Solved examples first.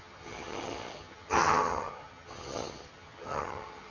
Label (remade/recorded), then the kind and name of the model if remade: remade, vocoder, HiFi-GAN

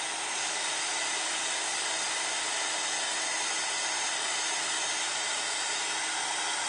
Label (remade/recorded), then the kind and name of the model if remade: recorded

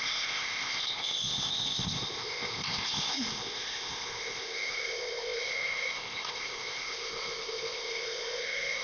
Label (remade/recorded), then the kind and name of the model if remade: remade, codec, ZipCodec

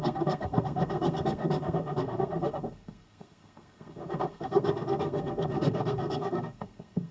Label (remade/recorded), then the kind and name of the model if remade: remade, codec, SNAC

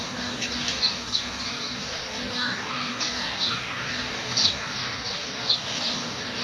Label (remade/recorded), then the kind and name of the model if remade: remade, codec, DAC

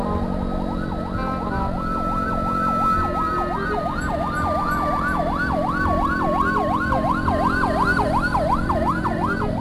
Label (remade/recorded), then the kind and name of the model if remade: recorded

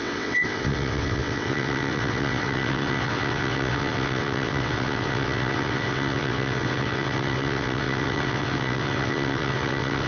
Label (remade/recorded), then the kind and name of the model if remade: remade, vocoder, WaveNeXt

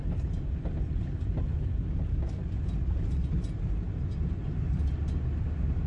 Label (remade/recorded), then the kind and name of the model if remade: recorded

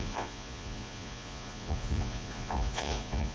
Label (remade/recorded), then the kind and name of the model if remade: remade, vocoder, Vocos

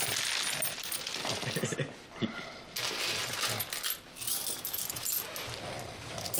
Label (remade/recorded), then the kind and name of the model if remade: recorded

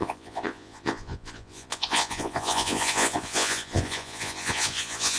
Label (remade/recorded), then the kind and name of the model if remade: remade, vocoder, Vocos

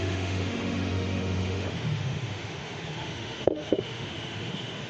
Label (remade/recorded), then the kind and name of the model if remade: remade, autoencoder, DAC-VAE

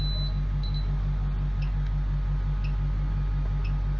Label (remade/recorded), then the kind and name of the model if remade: recorded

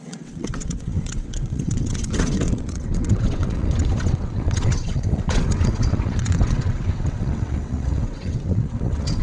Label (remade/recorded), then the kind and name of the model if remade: remade, vocoder, WaveNeXt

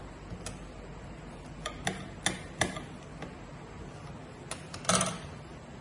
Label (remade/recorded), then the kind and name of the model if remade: recorded